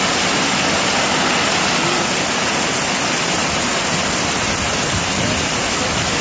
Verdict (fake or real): real